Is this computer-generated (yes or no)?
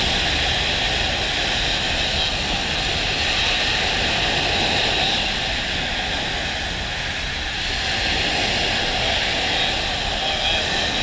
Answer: no